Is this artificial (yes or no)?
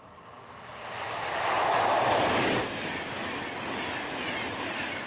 no